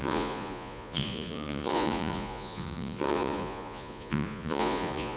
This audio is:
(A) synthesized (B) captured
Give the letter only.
A